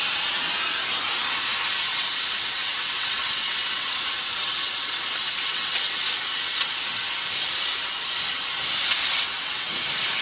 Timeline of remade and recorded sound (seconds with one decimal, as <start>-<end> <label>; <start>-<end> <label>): 0.0-1.9 recorded; 1.9-7.0 remade; 7.0-8.9 recorded; 8.9-9.7 remade; 9.7-10.2 recorded